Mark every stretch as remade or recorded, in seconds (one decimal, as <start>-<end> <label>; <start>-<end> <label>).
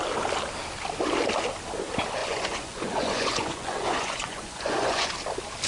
0.0-2.2 recorded; 2.2-5.1 remade; 5.1-5.7 recorded